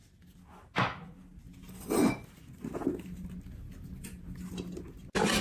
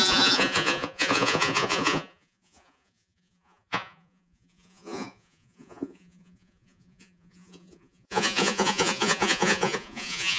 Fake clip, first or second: second